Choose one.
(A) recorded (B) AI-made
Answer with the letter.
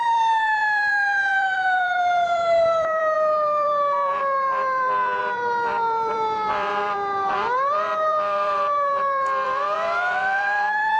B